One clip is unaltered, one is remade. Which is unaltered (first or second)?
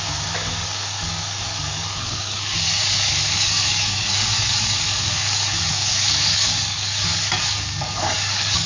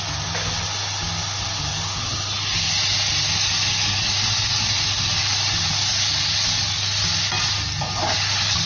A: second